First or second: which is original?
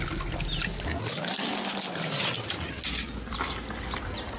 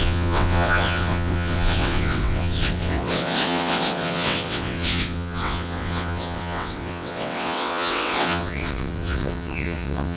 first